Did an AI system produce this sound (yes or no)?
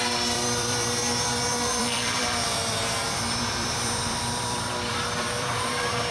yes